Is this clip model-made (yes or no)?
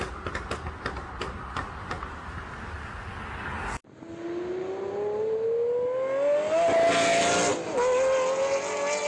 no